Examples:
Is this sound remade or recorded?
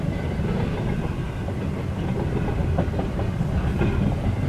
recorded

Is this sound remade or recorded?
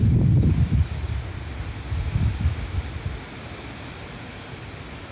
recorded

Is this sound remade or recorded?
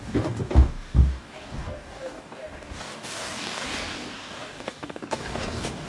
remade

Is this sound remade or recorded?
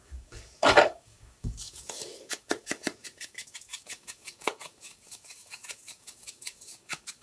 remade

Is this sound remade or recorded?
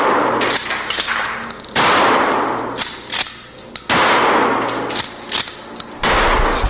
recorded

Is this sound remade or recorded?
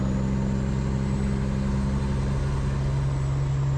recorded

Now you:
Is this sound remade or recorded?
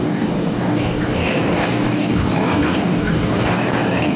remade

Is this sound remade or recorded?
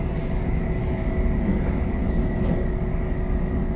remade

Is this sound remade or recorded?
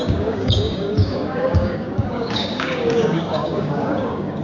remade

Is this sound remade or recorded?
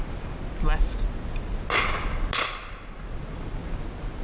recorded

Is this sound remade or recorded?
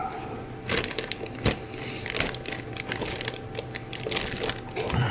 recorded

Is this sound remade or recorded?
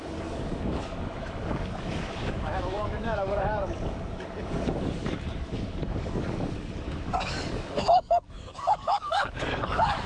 remade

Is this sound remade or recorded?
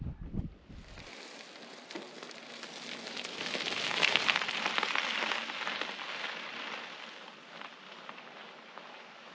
recorded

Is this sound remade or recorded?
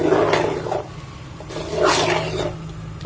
recorded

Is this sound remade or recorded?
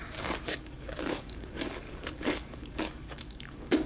remade